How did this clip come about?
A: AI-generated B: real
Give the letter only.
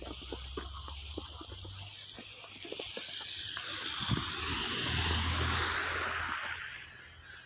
B